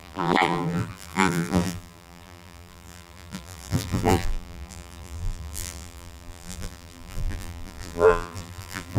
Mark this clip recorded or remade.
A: remade